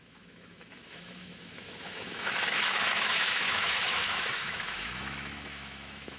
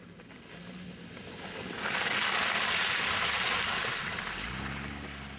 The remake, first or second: first